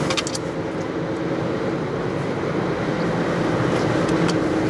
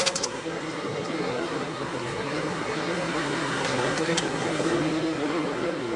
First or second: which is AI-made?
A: second